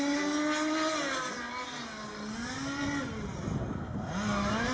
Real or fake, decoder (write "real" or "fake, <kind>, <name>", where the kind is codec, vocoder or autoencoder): real